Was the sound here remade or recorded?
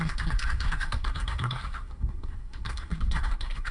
remade